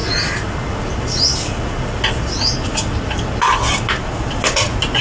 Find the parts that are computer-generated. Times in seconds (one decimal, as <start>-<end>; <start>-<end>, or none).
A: none